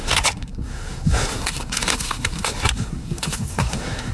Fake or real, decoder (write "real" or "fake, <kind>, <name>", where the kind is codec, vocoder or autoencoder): fake, codec, SNAC